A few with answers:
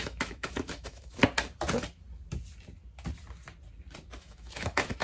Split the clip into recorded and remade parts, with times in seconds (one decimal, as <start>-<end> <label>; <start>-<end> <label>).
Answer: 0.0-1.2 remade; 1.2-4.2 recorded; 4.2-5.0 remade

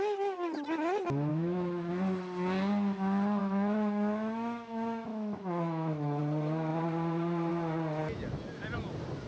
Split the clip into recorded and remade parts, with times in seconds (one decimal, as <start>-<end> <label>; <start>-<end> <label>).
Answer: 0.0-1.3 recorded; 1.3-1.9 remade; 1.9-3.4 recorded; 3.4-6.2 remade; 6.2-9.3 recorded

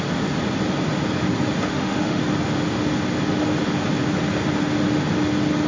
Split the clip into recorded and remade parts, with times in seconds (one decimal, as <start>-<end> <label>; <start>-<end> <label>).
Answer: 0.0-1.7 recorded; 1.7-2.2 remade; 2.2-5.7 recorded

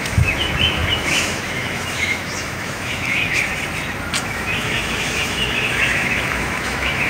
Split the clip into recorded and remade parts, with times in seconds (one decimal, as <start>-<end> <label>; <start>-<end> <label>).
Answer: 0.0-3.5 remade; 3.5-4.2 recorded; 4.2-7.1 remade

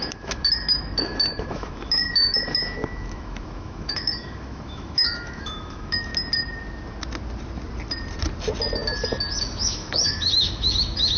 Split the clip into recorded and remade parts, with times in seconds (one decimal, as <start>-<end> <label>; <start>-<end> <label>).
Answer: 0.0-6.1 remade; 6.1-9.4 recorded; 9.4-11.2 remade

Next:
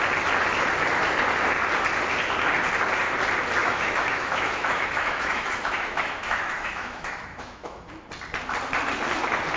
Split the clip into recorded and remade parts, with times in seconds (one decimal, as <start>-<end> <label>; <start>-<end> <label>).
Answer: 0.0-3.6 recorded; 3.6-7.9 remade; 7.9-9.6 recorded

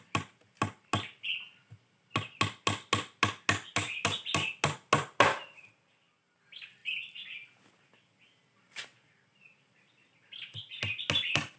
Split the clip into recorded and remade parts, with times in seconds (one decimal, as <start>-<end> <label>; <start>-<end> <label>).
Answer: 0.0-11.6 recorded